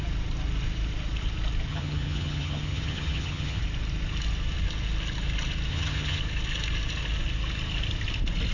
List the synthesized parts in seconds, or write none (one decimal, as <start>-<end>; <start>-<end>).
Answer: 1.7-3.6; 5.7-6.2